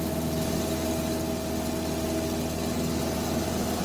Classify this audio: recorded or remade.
recorded